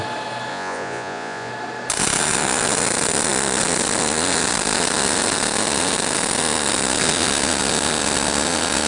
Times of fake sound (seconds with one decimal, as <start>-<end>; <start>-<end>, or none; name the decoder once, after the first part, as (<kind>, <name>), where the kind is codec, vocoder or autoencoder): 0.5-1.5 (vocoder, Vocos)